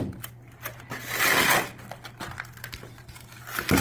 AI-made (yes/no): no